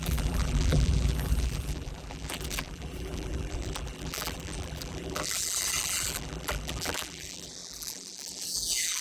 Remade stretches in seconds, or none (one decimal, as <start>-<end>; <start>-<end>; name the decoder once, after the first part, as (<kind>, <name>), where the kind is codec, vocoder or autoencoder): 0.0-9.0 (vocoder, BigVGAN v2)